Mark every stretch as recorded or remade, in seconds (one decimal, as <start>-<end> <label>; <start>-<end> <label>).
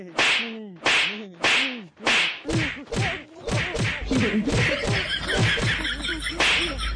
0.0-7.0 recorded